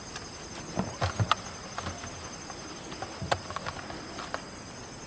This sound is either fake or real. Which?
real